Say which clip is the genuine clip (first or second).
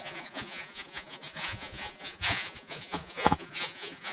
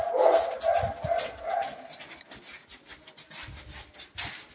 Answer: second